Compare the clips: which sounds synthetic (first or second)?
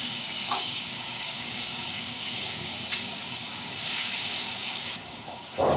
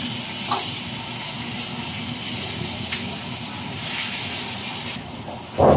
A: first